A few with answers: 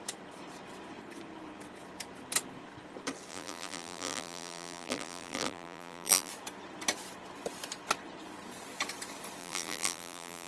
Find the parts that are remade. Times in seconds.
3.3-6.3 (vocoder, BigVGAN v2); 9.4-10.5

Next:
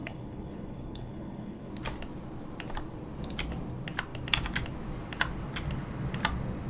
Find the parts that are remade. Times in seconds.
0.0-1.7 (codec, HILCodec)

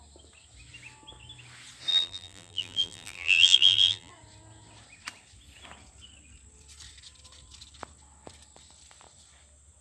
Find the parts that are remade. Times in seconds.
1.9-4.1 (vocoder, BigVGAN v2)

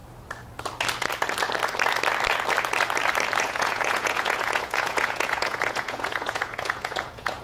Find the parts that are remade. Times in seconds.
3.4-7.4 (vocoder, Vocos)

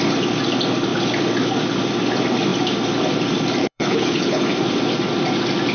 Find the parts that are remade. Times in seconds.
3.6-4.4 (codec, HILCodec)

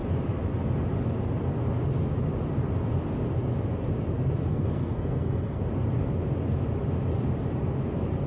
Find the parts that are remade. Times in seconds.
4.5-5.6 (codec, SNAC)

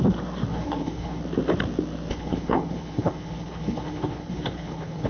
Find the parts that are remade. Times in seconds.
0.5-1.2 (codec, HILCodec); 2.1-5.1

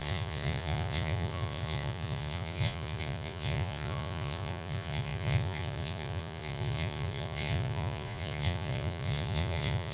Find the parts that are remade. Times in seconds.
0.0-9.9 (vocoder, Vocos)